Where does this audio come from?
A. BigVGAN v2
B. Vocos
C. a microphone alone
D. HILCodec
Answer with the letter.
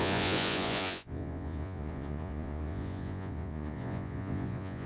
B